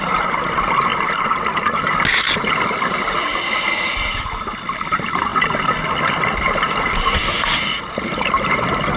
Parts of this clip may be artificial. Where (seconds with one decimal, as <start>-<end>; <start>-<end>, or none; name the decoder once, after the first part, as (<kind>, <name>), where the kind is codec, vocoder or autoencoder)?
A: none